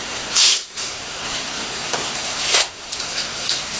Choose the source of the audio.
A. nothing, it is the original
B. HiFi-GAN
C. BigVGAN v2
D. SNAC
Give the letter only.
D